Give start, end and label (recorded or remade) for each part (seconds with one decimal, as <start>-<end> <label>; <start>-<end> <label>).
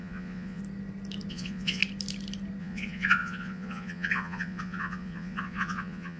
0.0-0.6 remade; 0.6-1.3 recorded; 1.3-1.8 remade; 1.8-2.6 recorded; 2.6-6.2 remade